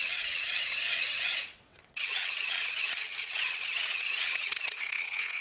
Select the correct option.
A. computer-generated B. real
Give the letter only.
A